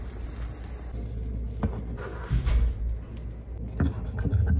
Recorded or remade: recorded